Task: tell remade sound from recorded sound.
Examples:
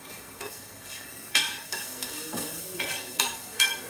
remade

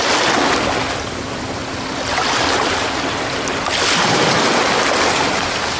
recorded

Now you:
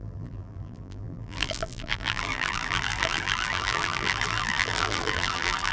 remade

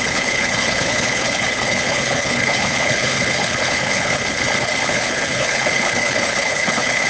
remade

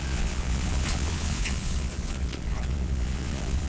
remade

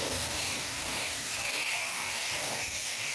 remade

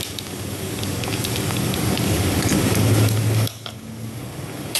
remade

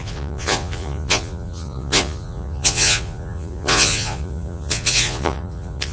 remade